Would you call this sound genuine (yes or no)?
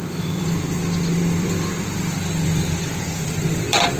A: no